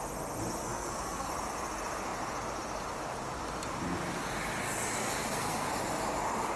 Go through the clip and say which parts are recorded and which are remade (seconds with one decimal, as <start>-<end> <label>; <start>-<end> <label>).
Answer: 0.0-0.6 recorded; 0.6-1.3 remade; 1.3-5.0 recorded; 5.0-5.7 remade; 5.7-6.6 recorded